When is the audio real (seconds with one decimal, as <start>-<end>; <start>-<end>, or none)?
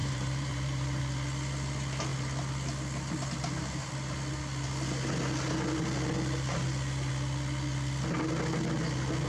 1.0-9.3